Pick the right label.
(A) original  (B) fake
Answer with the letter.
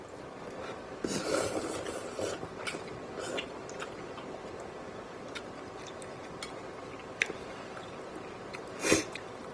A